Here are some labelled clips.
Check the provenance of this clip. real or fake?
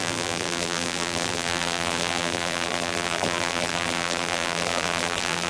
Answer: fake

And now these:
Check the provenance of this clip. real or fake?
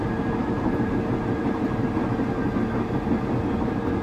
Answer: real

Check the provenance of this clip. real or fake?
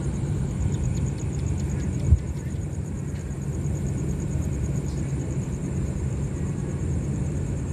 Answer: fake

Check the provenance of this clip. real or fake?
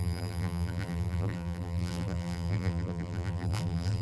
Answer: fake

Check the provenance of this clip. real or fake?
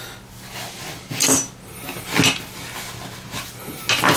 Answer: real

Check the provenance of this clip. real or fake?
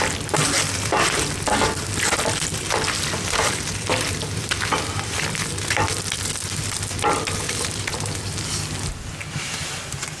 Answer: real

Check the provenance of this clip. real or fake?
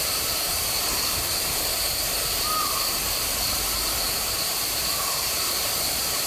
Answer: fake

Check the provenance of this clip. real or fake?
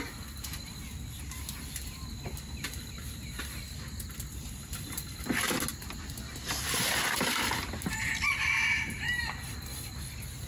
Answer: real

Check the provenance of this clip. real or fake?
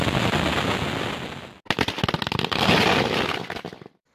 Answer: real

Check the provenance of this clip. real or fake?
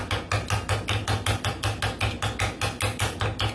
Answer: real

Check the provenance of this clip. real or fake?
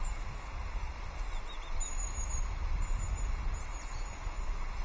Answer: real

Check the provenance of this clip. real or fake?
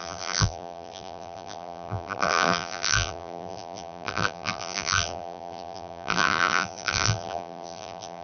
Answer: fake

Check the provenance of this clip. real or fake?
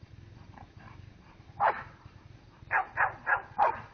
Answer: fake